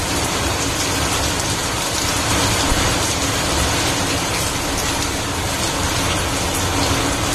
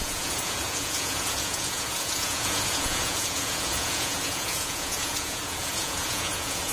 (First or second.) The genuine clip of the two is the first